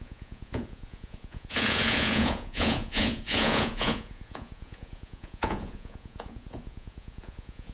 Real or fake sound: fake